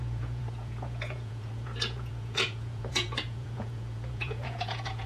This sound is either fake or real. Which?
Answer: fake